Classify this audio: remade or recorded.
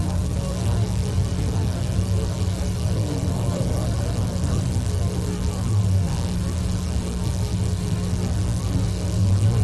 remade